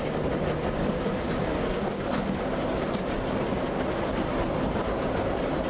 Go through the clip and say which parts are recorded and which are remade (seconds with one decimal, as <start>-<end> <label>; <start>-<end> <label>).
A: 0.0-1.4 recorded; 1.4-2.0 remade; 2.0-5.7 recorded